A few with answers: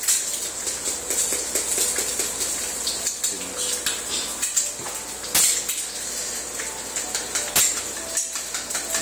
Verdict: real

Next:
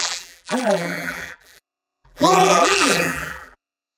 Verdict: fake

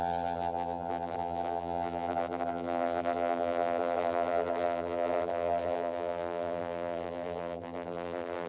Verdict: fake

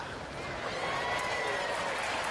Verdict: real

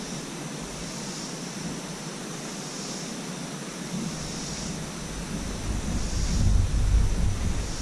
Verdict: real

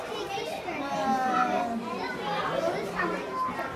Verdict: real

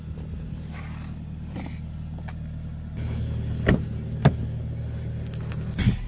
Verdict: real